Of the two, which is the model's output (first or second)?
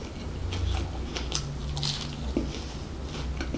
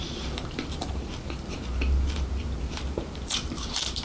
second